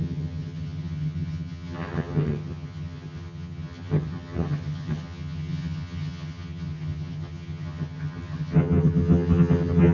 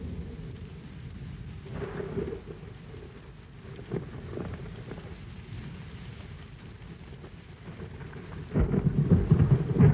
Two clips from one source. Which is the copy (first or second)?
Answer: first